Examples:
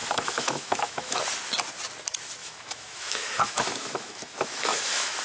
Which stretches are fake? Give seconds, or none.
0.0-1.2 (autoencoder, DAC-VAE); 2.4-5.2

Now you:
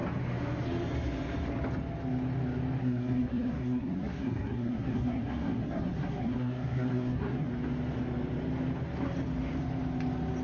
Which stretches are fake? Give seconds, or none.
2.8-7.5 (codec, SNAC)